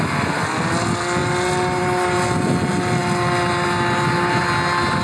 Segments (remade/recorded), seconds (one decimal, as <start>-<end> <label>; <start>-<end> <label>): 0.0-5.0 recorded